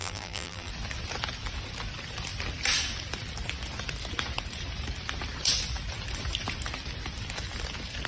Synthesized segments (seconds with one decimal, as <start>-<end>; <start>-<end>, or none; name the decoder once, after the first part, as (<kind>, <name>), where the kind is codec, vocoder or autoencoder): 0.0-0.7 (vocoder, BigVGAN v2)

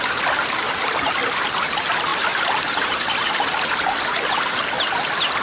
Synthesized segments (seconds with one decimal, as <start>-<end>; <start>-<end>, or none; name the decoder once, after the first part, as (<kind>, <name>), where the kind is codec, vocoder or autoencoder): none